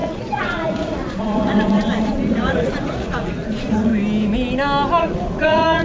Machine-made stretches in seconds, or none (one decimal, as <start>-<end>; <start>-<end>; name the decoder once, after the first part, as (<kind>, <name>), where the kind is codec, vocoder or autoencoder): 0.0-3.9 (vocoder, Vocos); 5.0-5.8

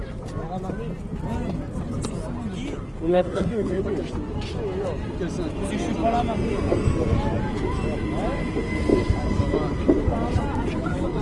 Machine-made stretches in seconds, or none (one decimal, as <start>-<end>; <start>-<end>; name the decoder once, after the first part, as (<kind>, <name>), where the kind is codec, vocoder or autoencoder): 3.1-3.8 (codec, SNAC)

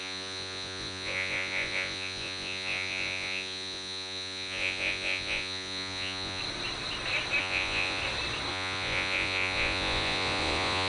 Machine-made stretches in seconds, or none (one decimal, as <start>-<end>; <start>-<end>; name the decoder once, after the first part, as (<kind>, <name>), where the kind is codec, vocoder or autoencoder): 0.0-6.4 (vocoder, Vocos); 7.4-8.0; 8.5-10.9

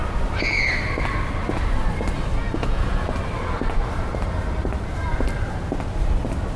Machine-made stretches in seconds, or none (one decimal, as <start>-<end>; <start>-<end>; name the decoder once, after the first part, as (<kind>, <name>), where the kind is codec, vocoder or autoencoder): 2.4-3.1 (vocoder, Vocos)

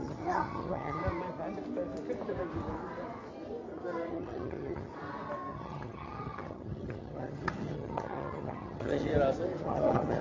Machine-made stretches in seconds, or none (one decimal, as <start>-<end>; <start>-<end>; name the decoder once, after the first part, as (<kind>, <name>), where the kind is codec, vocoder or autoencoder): 0.0-1.0 (vocoder, HiFi-GAN); 4.1-4.9; 5.5-9.1; 9.6-10.2

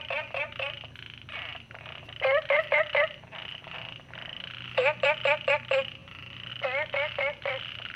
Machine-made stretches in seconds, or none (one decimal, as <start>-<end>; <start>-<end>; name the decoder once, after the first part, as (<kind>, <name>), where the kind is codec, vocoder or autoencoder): none

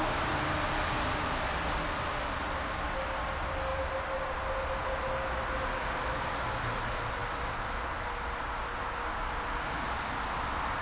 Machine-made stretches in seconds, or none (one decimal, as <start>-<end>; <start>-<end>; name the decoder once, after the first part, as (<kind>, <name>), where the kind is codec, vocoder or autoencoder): none